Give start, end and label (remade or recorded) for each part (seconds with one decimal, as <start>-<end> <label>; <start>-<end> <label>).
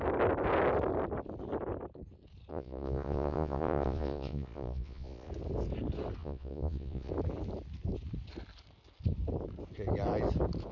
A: 0.0-2.5 recorded; 2.5-5.3 remade; 5.3-6.2 recorded; 6.2-7.1 remade; 7.1-10.7 recorded